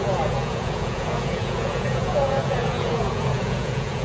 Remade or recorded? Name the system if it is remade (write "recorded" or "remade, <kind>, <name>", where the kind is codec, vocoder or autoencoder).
remade, vocoder, Vocos